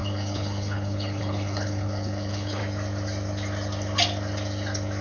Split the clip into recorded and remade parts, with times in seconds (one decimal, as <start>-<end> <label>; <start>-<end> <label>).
0.0-2.6 remade; 2.6-5.0 recorded